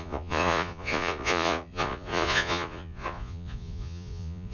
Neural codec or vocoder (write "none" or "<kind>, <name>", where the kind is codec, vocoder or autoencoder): vocoder, Vocos